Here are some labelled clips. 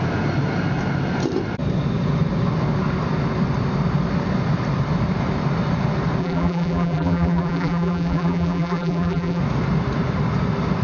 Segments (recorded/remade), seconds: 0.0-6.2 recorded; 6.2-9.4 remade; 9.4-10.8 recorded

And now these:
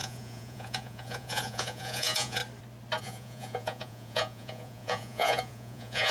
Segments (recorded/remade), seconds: 0.0-2.4 remade; 2.4-3.0 recorded; 3.0-6.1 remade

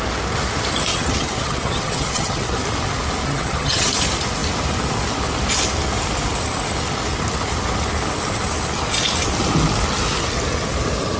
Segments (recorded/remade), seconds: 0.0-0.9 recorded; 0.9-2.6 remade; 2.6-3.2 recorded; 3.2-3.9 remade; 3.9-11.2 recorded

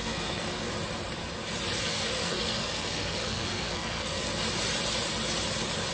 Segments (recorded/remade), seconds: 0.0-0.7 remade; 0.7-1.9 recorded; 1.9-4.2 remade; 4.2-5.9 recorded

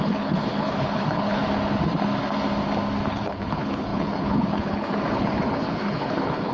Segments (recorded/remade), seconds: 0.0-1.4 remade; 1.4-3.1 recorded; 3.1-6.5 remade

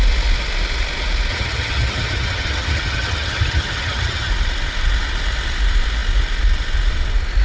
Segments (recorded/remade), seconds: 0.0-1.3 recorded; 1.3-4.3 remade; 4.3-7.4 recorded

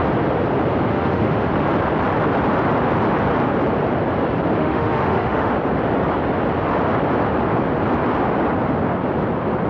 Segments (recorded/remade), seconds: 0.0-0.9 recorded; 0.9-1.5 remade; 1.5-4.6 recorded; 4.6-5.5 remade; 5.5-9.7 recorded